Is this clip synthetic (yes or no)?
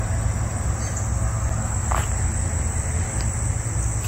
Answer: no